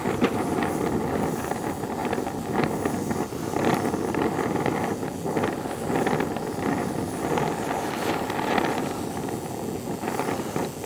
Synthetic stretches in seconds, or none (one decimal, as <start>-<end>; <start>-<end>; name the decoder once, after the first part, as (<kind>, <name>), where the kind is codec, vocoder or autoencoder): none